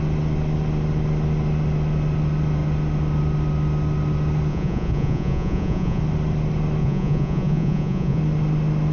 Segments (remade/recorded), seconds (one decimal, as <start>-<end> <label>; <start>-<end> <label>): 0.0-4.5 recorded; 4.5-6.0 remade; 6.0-6.8 recorded; 6.8-8.2 remade; 8.2-8.9 recorded